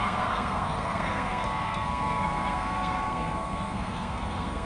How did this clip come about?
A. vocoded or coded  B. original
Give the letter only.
A